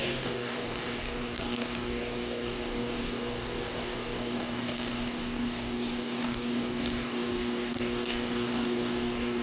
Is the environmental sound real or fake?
fake